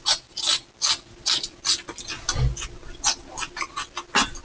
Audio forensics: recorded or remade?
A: recorded